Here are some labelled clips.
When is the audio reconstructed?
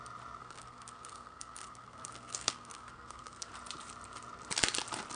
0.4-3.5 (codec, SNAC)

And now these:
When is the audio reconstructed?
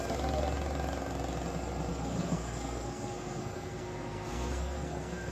1.9-5.3 (codec, SNAC)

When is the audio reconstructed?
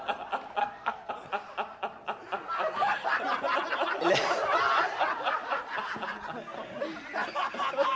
0.6-1.1 (codec, SNAC)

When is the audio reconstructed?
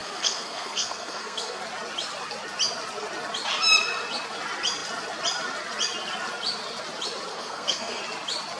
0.0-1.6 (codec, SNAC); 7.3-8.0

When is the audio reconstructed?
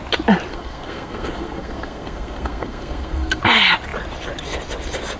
0.5-3.4 (codec, SNAC)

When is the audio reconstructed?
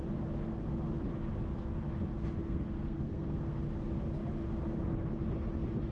2.2-3.6 (codec, SNAC)